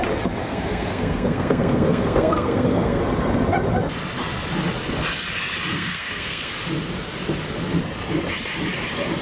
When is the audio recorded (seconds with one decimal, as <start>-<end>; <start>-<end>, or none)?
0.0-0.4; 3.0-5.7; 6.5-9.2